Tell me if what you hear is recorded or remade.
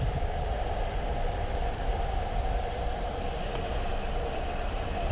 remade